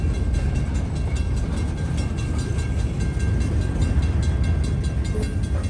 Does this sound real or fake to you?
real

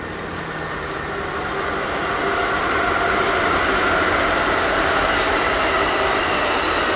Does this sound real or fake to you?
real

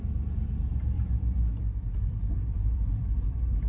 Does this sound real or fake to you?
fake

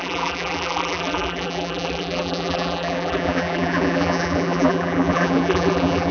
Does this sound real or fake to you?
fake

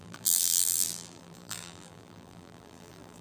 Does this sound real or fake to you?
fake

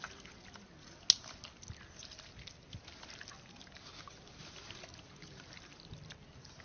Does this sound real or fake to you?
real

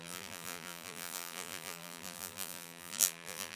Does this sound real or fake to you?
fake